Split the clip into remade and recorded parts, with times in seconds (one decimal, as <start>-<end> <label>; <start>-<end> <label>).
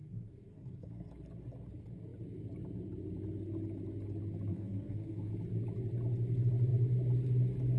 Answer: 0.0-1.1 remade; 1.1-4.5 recorded; 4.5-5.3 remade; 5.3-7.8 recorded